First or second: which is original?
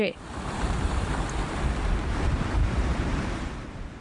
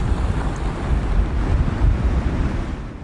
second